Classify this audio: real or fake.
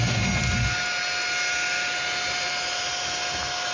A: real